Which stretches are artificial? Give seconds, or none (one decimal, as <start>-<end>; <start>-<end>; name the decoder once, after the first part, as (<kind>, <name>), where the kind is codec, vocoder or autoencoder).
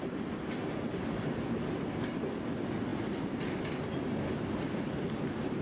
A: none